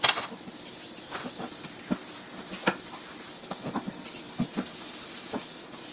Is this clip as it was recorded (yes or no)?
yes